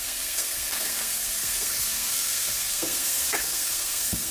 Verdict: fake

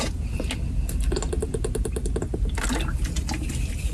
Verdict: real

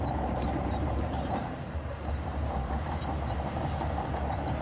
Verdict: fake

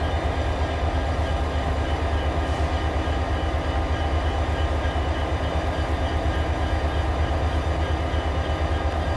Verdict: real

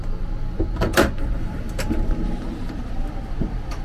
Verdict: fake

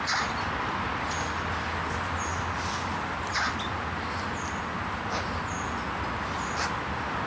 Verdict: real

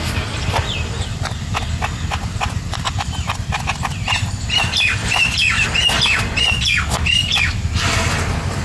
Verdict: fake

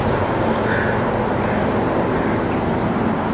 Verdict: fake